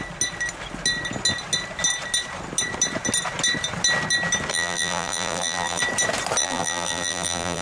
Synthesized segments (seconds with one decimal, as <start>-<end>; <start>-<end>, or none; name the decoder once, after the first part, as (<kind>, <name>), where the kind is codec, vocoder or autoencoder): 4.5-5.8 (vocoder, BigVGAN v2); 6.4-7.6